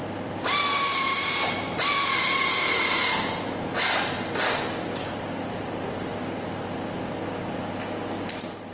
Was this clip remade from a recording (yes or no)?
no